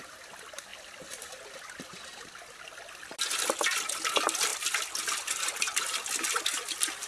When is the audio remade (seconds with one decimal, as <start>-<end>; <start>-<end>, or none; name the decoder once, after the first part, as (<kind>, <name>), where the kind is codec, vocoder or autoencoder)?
none